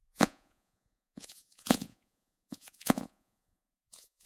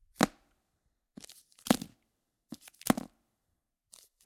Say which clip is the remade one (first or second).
first